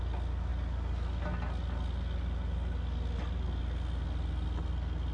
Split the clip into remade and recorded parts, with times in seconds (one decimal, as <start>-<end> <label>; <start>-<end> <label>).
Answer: 0.0-5.1 recorded